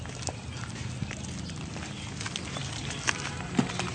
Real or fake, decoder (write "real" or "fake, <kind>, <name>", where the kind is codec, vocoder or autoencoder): real